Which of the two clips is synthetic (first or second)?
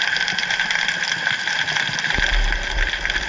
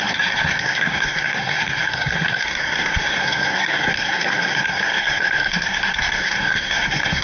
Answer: second